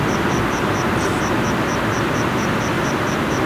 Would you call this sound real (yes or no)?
yes